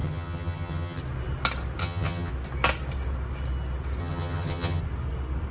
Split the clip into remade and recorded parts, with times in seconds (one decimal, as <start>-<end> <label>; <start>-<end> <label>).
0.0-1.0 remade; 1.0-1.8 recorded; 1.8-2.3 remade; 2.3-4.0 recorded; 4.0-4.8 remade; 4.8-5.5 recorded